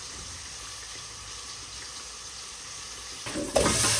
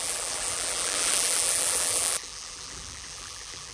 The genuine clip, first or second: first